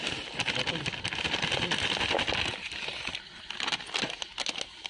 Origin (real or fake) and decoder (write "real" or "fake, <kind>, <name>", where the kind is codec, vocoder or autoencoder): real